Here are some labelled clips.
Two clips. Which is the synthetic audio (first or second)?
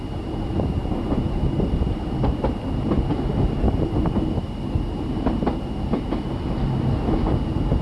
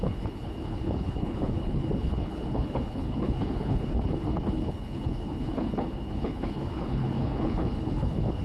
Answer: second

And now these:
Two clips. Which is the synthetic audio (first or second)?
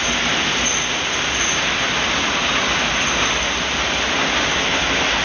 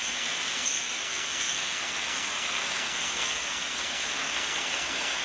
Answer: second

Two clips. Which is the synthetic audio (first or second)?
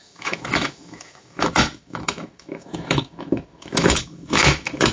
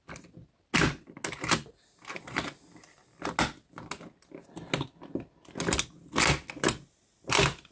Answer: first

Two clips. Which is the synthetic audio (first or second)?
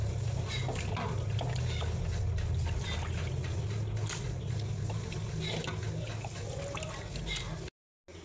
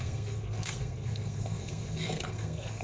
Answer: second